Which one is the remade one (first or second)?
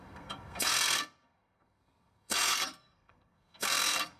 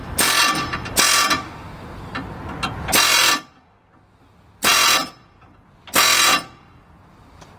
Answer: first